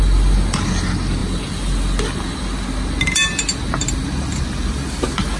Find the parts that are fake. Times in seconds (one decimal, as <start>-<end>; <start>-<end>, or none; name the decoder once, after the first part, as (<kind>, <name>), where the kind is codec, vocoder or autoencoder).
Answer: none